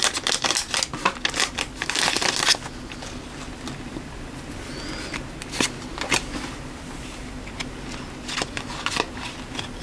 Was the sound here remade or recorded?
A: recorded